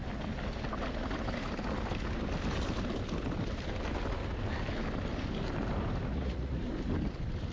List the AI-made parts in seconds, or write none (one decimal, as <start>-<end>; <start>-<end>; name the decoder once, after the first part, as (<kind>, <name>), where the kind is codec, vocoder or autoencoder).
6.1-6.6 (vocoder, Vocos)